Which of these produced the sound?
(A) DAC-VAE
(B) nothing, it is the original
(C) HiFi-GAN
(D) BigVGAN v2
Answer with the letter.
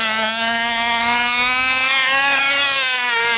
A